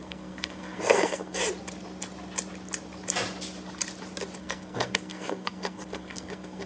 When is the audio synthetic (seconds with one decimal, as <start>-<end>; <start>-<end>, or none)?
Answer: 0.0-1.4; 4.4-6.7